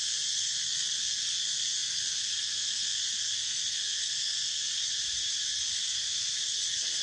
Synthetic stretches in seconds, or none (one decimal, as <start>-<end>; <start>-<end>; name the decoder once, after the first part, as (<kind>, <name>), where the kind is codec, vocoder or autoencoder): 0.0-4.8 (codec, SNAC); 5.5-7.0